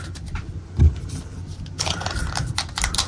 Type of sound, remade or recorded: remade